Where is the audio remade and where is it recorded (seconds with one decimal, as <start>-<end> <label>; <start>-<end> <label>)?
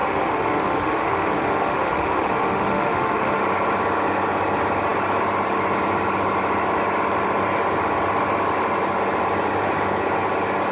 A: 0.0-3.4 remade; 3.4-10.7 recorded